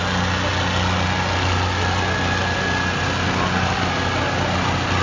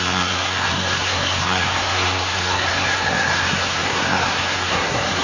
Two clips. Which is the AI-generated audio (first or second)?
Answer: second